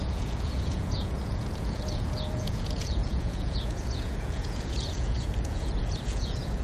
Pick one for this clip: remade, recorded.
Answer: remade